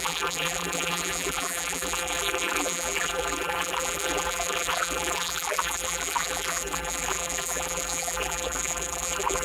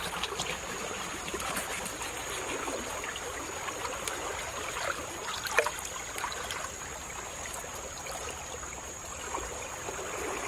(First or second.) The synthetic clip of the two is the first